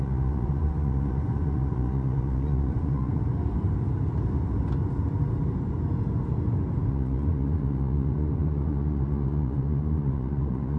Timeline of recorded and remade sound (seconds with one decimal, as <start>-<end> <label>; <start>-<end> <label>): 0.0-3.2 remade; 3.2-6.9 recorded; 6.9-10.8 remade

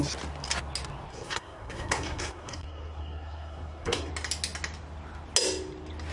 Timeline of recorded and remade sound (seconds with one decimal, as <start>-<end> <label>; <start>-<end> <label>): 0.0-1.1 recorded; 1.1-4.1 remade; 4.1-6.1 recorded

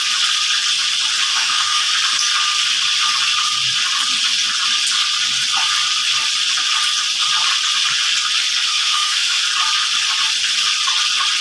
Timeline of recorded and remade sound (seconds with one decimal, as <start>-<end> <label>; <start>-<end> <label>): 0.0-1.3 recorded; 1.3-1.9 remade; 1.9-8.7 recorded; 8.7-9.4 remade; 9.4-11.4 recorded

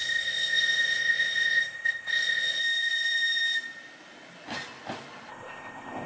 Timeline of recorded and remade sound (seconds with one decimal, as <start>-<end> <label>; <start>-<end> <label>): 0.0-2.6 remade; 2.6-5.3 recorded; 5.3-6.1 remade

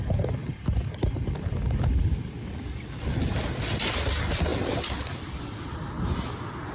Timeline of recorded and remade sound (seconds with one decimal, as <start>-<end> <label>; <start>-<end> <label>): 0.0-0.4 recorded; 0.4-3.2 remade; 3.2-4.5 recorded; 4.5-5.4 remade; 5.4-6.7 recorded

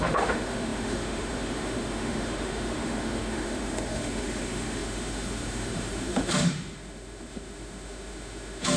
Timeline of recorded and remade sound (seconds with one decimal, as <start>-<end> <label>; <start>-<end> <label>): 0.0-8.8 remade

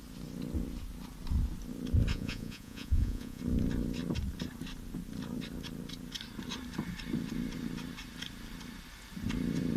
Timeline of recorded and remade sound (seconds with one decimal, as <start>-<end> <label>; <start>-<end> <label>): 0.0-2.1 recorded; 2.1-3.4 remade; 3.4-9.8 recorded